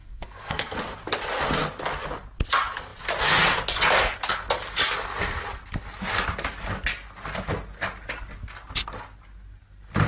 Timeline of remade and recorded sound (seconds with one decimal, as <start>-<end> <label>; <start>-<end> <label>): 0.0-0.7 remade; 0.7-10.1 recorded